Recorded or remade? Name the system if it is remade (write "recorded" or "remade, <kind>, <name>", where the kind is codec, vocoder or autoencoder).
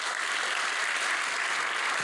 recorded